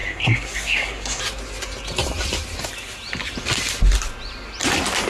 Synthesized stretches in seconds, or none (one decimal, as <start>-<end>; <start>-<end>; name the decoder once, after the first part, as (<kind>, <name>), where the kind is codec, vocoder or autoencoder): 0.0-1.2 (codec, SNAC)

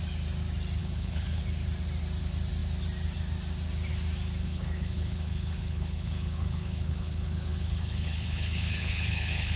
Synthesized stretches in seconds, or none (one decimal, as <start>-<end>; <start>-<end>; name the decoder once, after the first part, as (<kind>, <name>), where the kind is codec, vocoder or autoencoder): 0.8-1.4 (codec, HILCodec); 4.4-9.6